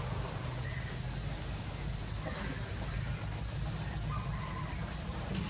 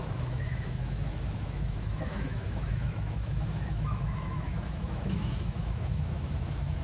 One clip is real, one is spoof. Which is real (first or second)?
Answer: first